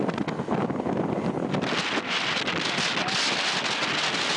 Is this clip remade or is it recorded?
recorded